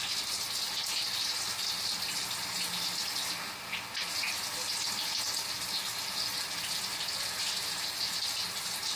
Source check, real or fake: real